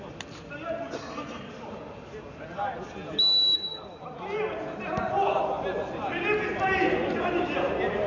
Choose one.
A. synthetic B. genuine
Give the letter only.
B